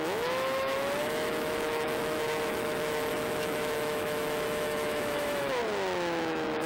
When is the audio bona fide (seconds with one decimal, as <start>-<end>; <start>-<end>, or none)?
5.6-6.2